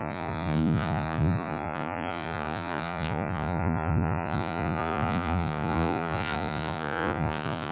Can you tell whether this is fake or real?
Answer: fake